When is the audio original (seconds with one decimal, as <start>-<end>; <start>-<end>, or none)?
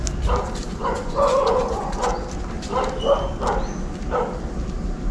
0.0-0.8; 2.1-5.1